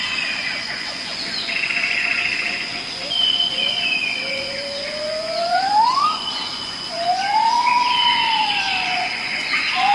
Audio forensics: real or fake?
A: fake